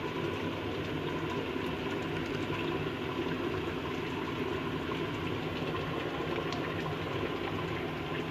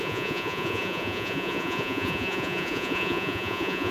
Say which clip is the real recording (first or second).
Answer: first